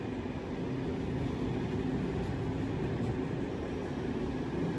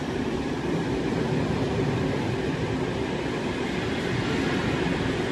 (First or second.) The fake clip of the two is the second